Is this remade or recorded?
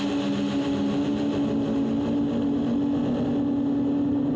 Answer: recorded